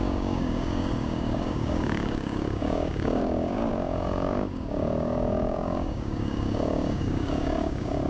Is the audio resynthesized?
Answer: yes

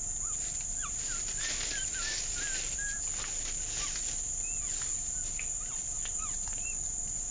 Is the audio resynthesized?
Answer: no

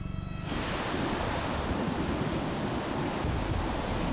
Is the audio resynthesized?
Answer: no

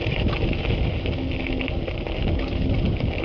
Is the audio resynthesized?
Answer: no